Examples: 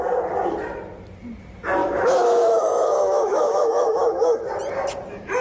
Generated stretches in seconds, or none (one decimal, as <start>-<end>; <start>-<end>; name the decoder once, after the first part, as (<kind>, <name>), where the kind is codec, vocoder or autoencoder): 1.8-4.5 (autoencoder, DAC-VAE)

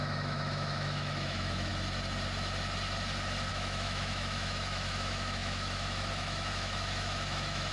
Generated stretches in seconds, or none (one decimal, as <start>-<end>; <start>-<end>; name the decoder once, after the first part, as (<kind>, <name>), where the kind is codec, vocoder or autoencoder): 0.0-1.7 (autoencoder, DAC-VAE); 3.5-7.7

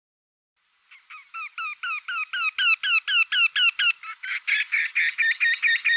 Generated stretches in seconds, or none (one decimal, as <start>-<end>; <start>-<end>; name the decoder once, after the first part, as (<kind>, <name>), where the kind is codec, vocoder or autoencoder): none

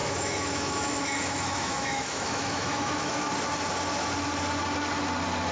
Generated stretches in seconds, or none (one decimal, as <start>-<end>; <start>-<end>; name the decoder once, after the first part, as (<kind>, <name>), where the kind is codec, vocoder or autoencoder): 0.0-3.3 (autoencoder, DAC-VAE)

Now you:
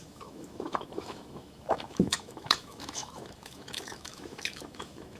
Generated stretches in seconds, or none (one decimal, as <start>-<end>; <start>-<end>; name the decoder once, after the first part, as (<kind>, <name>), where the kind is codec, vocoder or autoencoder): 0.0-5.2 (autoencoder, DAC-VAE)